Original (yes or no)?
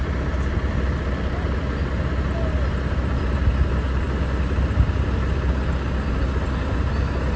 yes